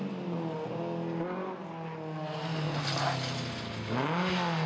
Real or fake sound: real